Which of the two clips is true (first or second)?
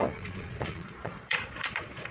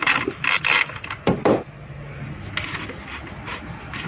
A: second